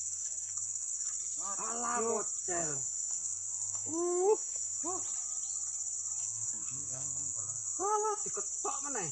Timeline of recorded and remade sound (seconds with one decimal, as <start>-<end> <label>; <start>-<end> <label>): 0.0-1.1 remade; 1.1-2.4 recorded; 2.4-4.8 remade; 4.8-6.2 recorded; 6.2-8.2 remade; 8.2-9.1 recorded